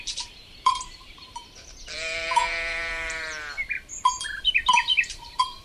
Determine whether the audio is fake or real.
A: fake